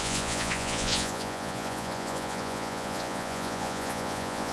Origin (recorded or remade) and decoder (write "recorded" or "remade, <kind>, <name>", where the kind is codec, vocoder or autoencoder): remade, vocoder, Vocos